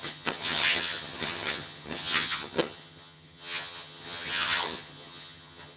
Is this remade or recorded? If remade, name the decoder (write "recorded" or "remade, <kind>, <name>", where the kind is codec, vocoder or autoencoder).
remade, vocoder, HiFi-GAN